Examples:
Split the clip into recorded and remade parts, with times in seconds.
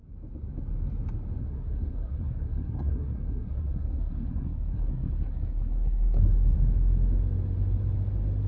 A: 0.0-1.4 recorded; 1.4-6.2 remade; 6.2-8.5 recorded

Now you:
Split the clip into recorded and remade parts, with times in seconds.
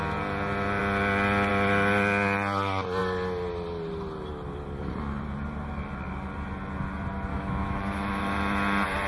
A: 0.0-7.3 recorded; 7.3-8.2 remade; 8.2-9.1 recorded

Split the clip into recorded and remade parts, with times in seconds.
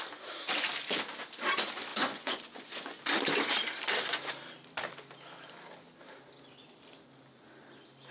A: 0.0-1.9 recorded; 1.9-3.0 remade; 3.0-8.1 recorded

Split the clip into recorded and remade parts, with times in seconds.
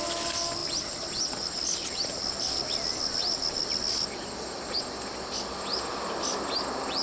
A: 0.0-7.0 recorded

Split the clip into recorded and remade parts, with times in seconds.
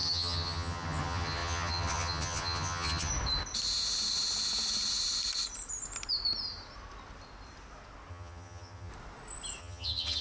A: 0.0-3.1 remade; 3.1-8.1 recorded; 8.1-8.9 remade; 8.9-9.6 recorded; 9.6-10.2 remade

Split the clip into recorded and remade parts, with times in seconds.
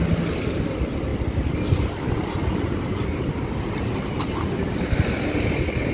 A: 0.0-5.9 recorded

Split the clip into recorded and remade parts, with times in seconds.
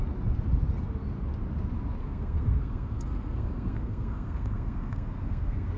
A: 0.0-2.0 recorded; 2.0-5.8 remade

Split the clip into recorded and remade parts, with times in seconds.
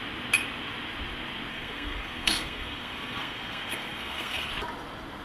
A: 0.0-1.5 recorded; 1.5-4.5 remade; 4.5-5.2 recorded